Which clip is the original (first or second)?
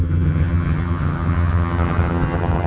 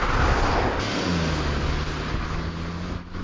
second